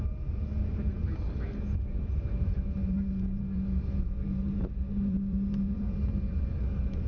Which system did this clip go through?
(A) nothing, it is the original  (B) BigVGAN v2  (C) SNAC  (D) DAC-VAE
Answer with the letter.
B